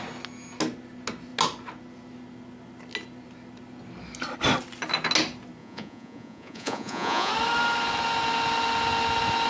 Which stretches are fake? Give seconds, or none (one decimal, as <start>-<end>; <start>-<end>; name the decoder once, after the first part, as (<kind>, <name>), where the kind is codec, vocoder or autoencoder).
5.6-7.3 (vocoder, Vocos)